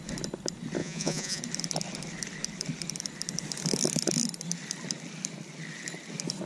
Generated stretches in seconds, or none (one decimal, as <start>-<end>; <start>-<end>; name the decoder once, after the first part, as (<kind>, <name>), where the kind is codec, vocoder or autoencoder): 0.8-1.4 (vocoder, Vocos)